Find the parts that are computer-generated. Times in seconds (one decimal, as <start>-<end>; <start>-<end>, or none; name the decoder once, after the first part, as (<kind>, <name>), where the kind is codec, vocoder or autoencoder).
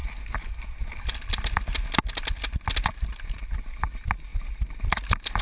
none